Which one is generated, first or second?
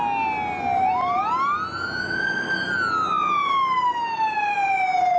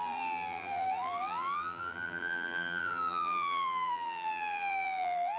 second